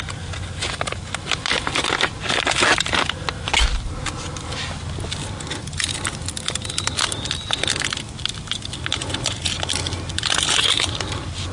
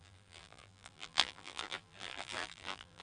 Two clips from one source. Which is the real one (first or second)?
first